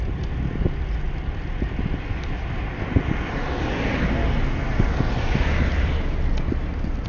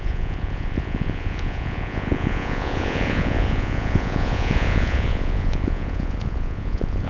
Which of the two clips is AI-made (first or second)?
second